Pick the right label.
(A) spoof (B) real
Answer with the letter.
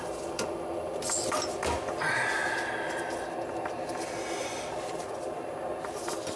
B